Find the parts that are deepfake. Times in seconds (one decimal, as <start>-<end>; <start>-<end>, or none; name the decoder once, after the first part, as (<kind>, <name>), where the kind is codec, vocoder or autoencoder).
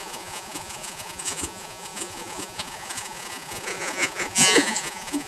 0.0-5.3 (vocoder, Vocos)